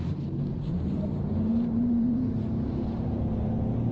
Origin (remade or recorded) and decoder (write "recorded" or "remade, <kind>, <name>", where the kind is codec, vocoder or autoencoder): remade, vocoder, BigVGAN v2